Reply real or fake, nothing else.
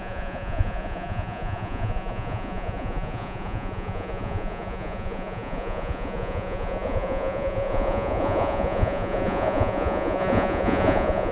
fake